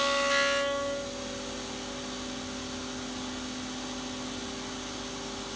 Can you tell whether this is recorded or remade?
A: recorded